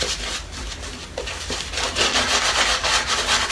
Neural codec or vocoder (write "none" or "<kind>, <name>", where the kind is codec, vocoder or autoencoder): none